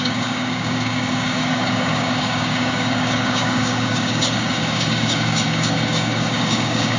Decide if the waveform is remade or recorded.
remade